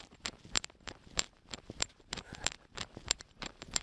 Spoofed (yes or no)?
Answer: yes